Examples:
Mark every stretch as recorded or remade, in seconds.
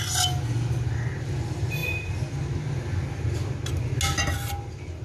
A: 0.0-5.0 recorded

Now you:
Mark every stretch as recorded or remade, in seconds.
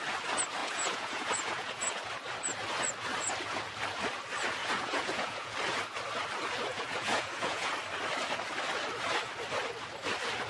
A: 0.0-0.6 recorded; 0.6-2.0 remade; 2.0-4.6 recorded; 4.6-5.5 remade; 5.5-6.7 recorded; 6.7-7.7 remade; 7.7-10.5 recorded